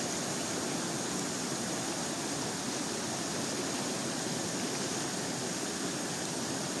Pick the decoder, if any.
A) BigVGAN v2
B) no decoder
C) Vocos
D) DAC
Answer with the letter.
B